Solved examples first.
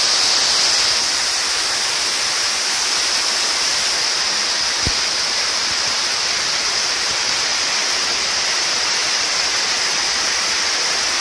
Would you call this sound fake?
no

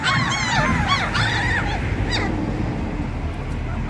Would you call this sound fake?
no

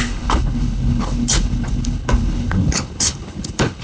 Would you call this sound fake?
yes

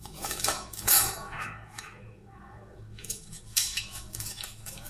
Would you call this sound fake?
yes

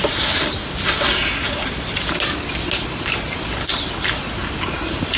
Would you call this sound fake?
no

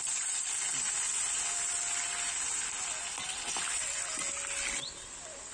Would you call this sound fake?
no